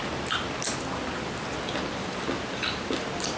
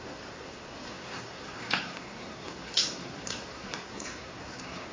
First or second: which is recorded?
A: first